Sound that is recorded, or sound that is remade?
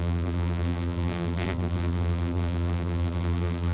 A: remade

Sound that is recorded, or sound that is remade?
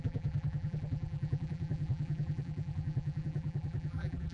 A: remade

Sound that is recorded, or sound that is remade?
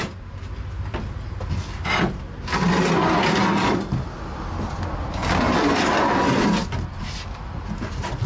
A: recorded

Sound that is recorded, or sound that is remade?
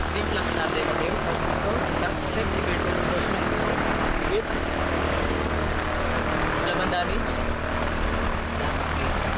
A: recorded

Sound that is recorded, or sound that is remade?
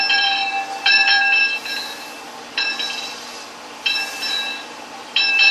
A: remade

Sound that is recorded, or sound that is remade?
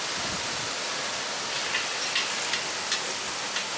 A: recorded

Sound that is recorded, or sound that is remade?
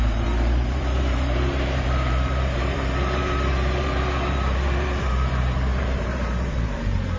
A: remade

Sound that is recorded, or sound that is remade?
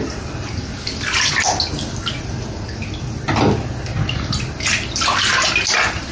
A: recorded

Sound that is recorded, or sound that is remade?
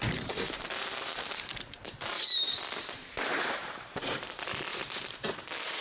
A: remade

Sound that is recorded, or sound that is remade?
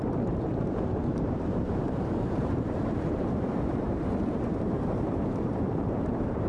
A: remade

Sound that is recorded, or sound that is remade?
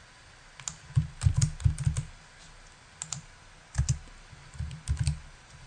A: recorded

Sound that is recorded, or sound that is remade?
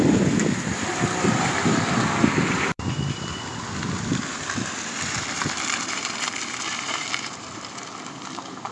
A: remade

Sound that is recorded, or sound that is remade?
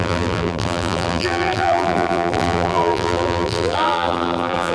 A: remade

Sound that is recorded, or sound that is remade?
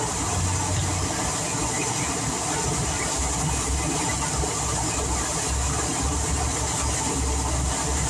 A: recorded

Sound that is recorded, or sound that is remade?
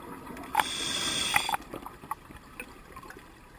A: remade